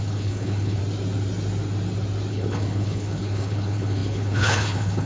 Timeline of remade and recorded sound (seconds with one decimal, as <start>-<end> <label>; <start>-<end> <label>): 0.0-0.8 remade; 0.8-2.3 recorded; 2.3-5.1 remade